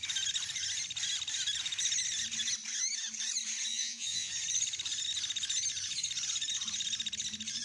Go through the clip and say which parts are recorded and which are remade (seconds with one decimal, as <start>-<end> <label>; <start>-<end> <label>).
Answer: 0.0-3.7 recorded; 3.7-4.3 remade; 4.3-7.6 recorded